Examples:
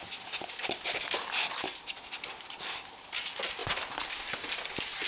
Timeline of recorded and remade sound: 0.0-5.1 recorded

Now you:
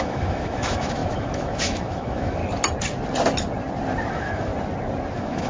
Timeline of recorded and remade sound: 0.0-2.4 remade; 2.4-4.1 recorded; 4.1-4.5 remade; 4.5-5.1 recorded; 5.1-5.5 remade

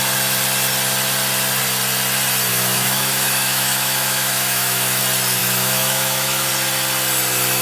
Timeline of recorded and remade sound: 0.0-2.5 recorded; 2.5-5.0 remade; 5.0-5.4 recorded; 5.4-6.5 remade; 6.5-7.6 recorded

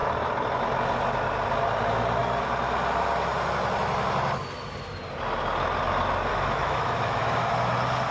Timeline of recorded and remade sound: 0.0-6.3 recorded; 6.3-7.5 remade; 7.5-8.1 recorded

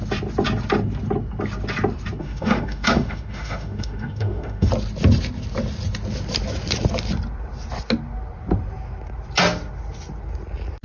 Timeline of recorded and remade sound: 0.0-2.2 recorded; 2.2-4.7 remade; 4.7-10.8 recorded

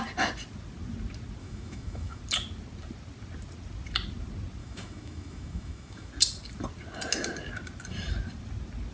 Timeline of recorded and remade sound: 0.0-1.4 recorded; 1.4-2.2 remade; 2.2-4.6 recorded; 4.6-6.1 remade; 6.1-8.9 recorded

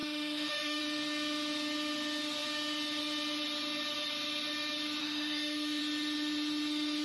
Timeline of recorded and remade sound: 0.0-0.8 remade; 0.8-5.0 recorded; 5.0-5.8 remade; 5.8-7.0 recorded

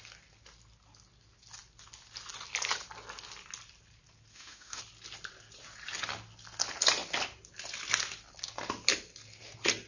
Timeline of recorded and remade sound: 0.0-4.3 recorded; 4.3-4.8 remade; 4.8-9.9 recorded